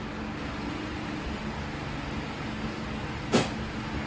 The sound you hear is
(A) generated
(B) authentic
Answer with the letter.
B